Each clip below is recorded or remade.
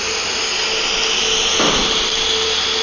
recorded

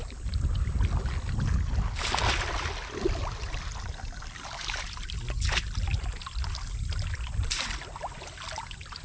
recorded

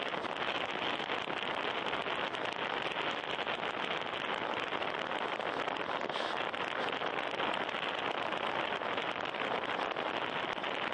recorded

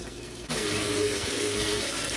remade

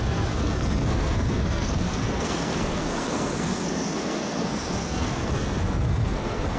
remade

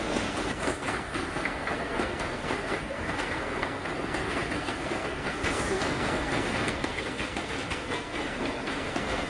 remade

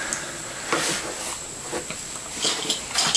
recorded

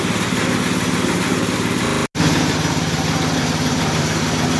recorded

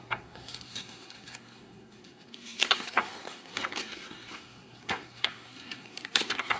remade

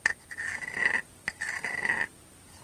recorded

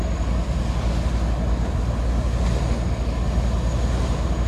recorded